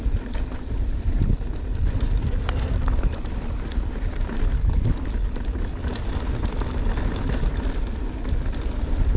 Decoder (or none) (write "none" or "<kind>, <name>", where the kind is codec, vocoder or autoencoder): none